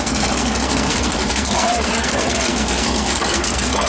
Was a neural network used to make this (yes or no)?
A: yes